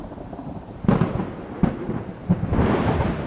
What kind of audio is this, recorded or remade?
remade